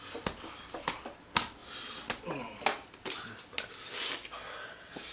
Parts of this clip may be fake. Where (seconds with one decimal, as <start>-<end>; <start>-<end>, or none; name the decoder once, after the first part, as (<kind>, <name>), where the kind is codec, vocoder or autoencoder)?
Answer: none